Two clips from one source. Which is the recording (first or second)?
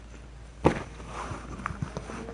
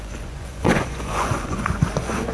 first